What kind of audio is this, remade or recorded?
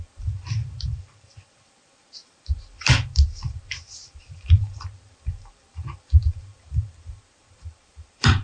remade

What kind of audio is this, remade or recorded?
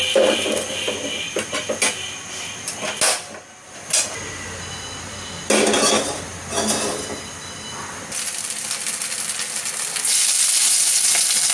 recorded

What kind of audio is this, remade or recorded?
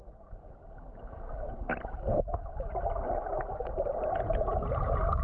recorded